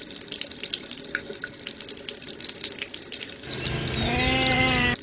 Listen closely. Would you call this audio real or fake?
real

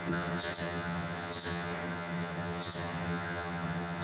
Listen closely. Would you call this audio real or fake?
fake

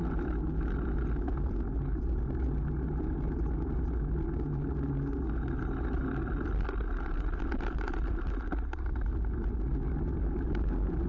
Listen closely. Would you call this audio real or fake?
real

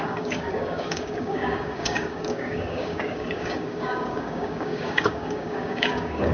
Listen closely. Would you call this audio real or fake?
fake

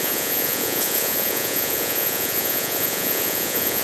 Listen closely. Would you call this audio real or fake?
fake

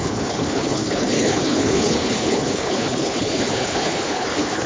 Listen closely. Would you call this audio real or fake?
fake